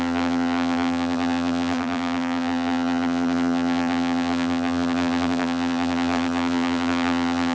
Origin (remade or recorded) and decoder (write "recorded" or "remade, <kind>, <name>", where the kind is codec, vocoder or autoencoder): remade, vocoder, BigVGAN v2